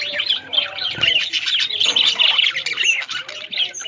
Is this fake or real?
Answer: real